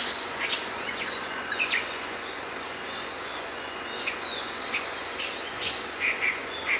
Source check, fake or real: fake